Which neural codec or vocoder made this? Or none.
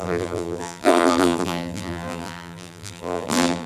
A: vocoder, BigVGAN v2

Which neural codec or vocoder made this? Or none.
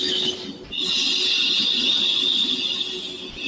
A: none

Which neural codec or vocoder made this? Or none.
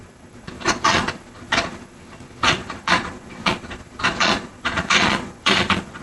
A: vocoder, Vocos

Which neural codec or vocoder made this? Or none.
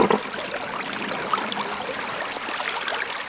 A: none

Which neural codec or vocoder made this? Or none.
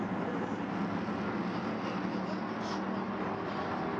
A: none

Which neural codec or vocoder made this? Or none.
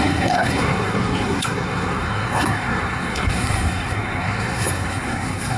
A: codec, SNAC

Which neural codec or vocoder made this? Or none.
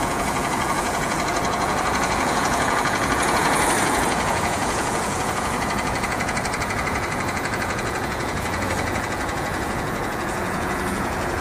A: vocoder, Vocos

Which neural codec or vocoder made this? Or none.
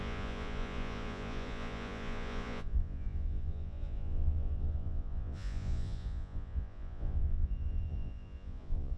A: vocoder, Vocos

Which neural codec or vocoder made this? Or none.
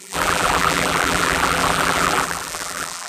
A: vocoder, BigVGAN v2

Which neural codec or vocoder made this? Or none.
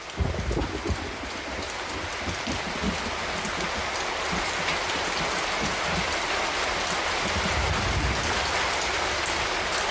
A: none